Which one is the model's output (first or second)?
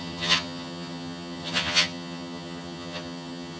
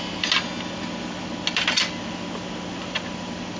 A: first